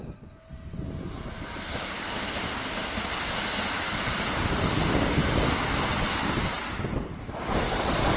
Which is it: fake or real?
real